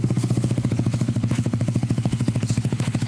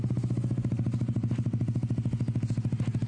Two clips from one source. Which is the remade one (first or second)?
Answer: first